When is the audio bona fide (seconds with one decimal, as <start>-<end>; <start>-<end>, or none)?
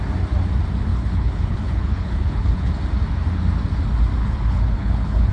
0.0-0.9; 2.7-4.2